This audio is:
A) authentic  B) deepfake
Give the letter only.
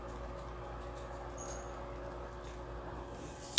A